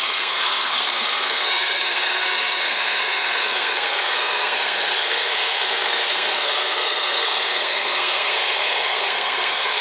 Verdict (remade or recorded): remade